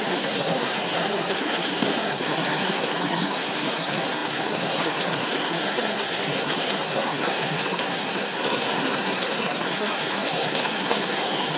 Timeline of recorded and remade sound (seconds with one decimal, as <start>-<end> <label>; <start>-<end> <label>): 0.0-11.6 remade